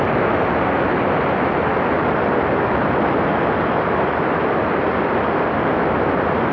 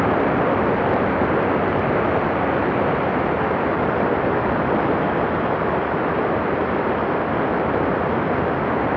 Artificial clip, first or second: second